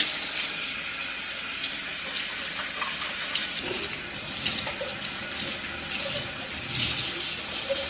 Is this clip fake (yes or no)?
no